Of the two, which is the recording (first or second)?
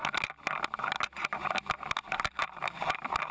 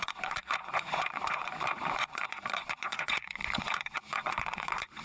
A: first